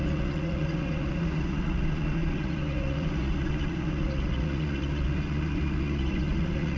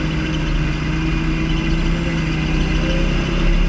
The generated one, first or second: first